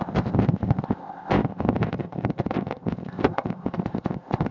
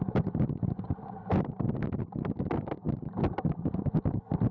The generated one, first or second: first